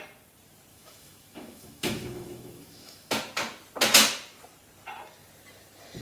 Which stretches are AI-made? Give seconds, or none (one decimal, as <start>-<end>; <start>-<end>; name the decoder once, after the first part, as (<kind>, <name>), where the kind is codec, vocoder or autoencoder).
0.7-3.1 (autoencoder, DAC-VAE)